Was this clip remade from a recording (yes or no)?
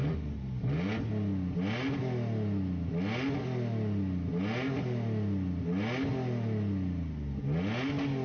no